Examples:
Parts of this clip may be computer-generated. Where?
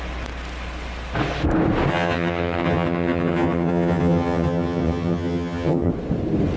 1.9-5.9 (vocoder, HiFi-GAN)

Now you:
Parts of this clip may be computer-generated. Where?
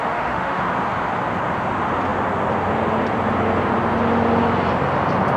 0.0-0.6 (autoencoder, DAC-VAE)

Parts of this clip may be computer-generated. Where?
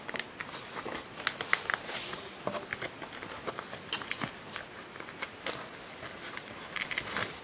none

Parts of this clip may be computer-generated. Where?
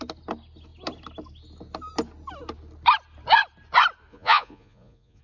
4.1-5.2 (vocoder, Vocos)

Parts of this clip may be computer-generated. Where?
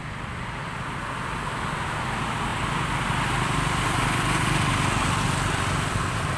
none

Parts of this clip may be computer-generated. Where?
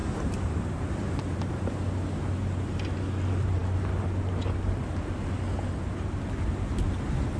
0.0-1.7 (vocoder, BigVGAN v2)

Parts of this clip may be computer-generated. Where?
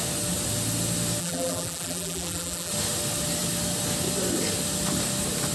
1.2-2.7 (vocoder, BigVGAN v2)